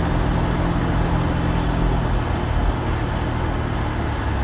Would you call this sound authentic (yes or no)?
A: yes